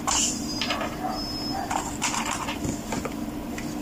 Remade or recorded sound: remade